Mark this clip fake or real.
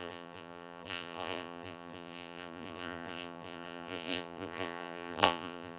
fake